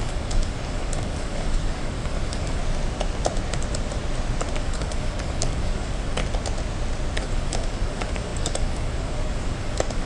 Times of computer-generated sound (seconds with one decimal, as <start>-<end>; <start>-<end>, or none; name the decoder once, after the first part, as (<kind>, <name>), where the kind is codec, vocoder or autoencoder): 0.0-2.6 (codec, DAC); 4.6-6.2; 7.2-10.1